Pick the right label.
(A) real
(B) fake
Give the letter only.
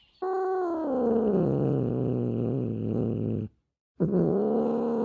A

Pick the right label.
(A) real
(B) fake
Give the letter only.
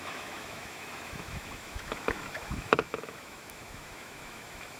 B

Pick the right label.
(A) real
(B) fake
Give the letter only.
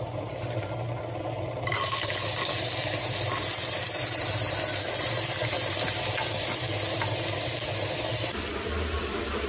A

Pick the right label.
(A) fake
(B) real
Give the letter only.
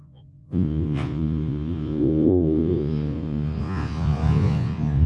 A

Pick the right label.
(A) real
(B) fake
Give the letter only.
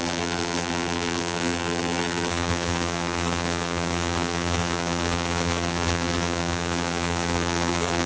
B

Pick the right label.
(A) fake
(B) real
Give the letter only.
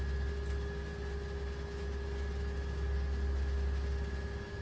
B